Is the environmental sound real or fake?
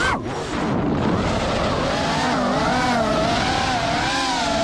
real